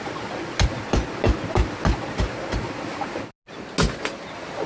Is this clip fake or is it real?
real